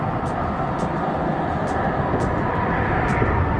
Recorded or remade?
recorded